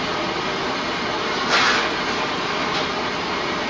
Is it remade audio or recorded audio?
recorded